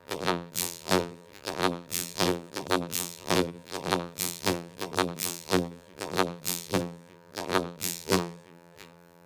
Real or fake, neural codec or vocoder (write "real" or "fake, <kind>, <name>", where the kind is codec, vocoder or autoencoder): fake, vocoder, BigVGAN v2